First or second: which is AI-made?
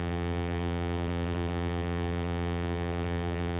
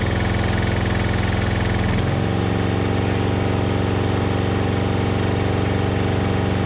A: first